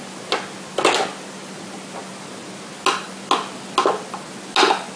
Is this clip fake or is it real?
real